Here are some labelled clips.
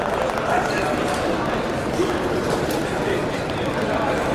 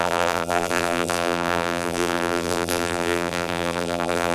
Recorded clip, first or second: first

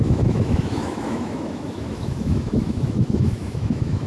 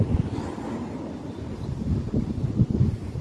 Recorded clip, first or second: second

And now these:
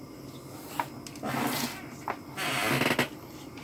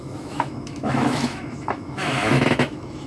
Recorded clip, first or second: first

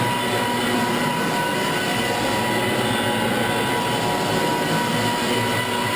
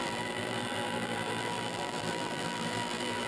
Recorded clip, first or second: first